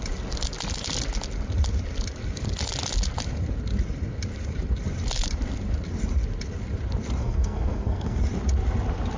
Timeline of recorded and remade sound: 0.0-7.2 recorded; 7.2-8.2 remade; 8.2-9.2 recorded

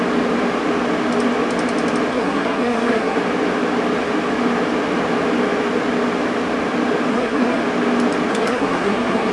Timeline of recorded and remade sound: 0.0-2.1 recorded; 2.1-3.2 remade; 3.2-7.1 recorded; 7.1-7.6 remade; 7.6-8.3 recorded; 8.3-9.3 remade

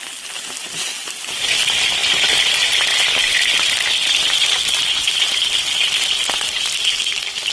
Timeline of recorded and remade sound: 0.0-7.5 recorded

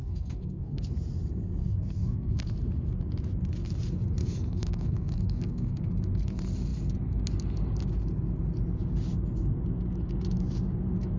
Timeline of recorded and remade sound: 0.0-0.8 remade; 0.8-1.6 recorded; 1.6-2.5 remade; 2.5-4.2 recorded; 4.2-5.9 remade; 5.9-11.2 recorded